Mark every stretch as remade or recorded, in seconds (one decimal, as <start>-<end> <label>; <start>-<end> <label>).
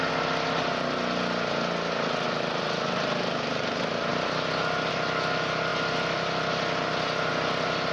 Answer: 0.0-7.9 recorded